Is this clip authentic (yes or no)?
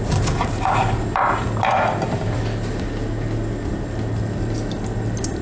yes